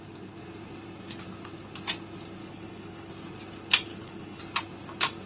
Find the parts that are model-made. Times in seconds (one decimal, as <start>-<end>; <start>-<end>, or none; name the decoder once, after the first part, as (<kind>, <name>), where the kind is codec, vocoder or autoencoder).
2.4-3.1 (codec, HILCodec); 3.9-4.4